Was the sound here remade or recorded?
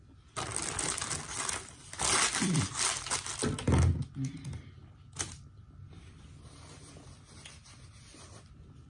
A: recorded